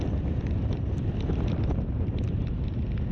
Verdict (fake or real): real